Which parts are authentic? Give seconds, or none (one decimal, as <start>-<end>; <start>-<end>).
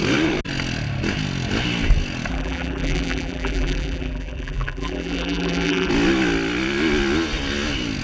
0.0-2.3; 5.9-8.0